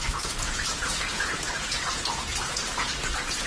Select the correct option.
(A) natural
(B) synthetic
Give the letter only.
B